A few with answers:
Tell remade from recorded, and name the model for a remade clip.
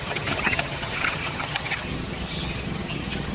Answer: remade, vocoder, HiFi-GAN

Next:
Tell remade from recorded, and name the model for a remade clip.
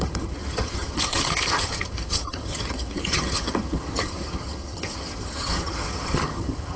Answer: remade, vocoder, HiFi-GAN